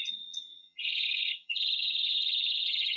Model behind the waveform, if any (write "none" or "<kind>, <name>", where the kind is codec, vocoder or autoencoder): vocoder, HiFi-GAN